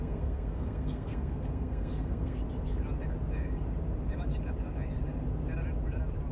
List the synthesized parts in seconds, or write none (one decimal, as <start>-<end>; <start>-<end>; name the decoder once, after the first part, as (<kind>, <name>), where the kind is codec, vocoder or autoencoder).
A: 0.0-2.4 (codec, SNAC)